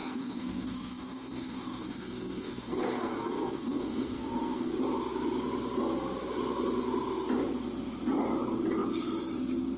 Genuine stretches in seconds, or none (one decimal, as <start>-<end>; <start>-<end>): 4.7-9.8